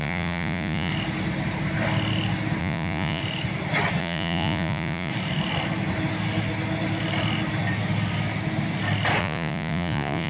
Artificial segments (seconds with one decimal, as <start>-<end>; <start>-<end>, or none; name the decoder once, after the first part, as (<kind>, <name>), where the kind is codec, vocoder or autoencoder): 0.0-0.9 (vocoder, Vocos); 2.6-3.2; 4.0-5.1; 9.2-10.3